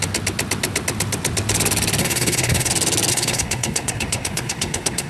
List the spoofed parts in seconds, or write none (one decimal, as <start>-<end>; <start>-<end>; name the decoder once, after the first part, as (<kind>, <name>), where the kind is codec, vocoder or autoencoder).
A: 2.0-2.7 (codec, SNAC); 3.1-5.1